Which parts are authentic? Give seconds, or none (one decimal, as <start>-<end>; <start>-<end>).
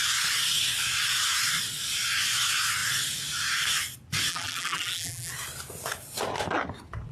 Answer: 0.0-4.3; 5.3-7.1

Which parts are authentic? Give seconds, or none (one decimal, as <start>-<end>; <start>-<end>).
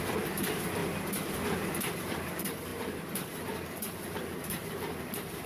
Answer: 0.8-2.0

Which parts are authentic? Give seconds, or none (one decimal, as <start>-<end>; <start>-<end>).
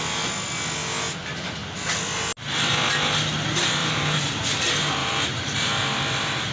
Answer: 0.0-3.8; 4.4-5.0; 5.8-6.5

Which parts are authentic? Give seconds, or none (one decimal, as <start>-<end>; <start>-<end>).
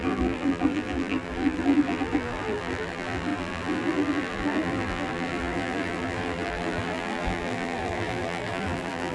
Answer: none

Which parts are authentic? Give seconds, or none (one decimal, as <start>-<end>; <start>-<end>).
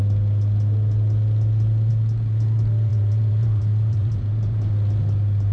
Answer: 0.0-2.9; 4.7-5.5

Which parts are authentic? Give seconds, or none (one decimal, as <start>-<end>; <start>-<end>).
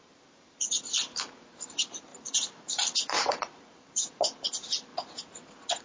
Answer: 4.9-5.8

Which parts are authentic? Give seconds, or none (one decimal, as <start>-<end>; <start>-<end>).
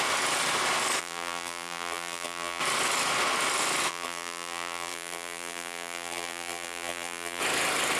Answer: 0.0-1.0; 2.6-3.9; 7.4-8.0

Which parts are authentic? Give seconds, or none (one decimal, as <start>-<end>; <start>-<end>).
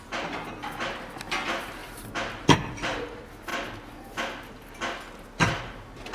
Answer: 0.0-1.8; 3.0-6.1